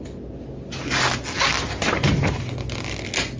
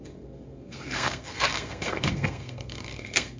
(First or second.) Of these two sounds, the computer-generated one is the second